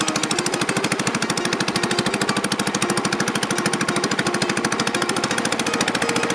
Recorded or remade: recorded